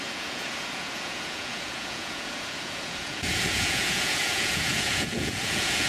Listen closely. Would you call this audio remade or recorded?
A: remade